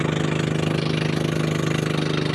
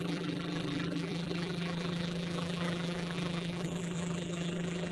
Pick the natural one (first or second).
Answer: first